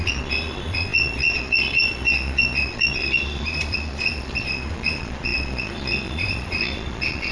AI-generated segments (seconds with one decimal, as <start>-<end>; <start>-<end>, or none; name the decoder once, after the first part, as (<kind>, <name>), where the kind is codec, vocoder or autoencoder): 0.0-7.3 (vocoder, Vocos)